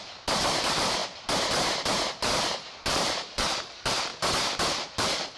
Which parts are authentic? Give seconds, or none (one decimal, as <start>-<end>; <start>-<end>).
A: 1.0-2.2; 4.1-4.7